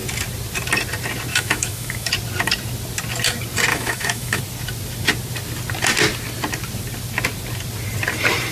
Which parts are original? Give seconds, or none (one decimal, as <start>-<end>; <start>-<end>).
0.0-1.3; 2.1-3.7; 4.4-8.5